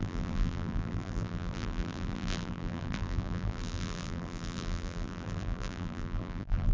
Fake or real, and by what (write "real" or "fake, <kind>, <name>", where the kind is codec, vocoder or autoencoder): fake, vocoder, BigVGAN v2